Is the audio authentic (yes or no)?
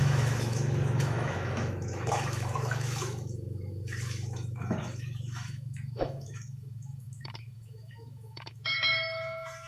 no